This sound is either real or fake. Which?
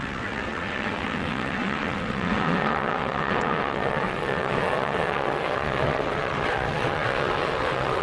fake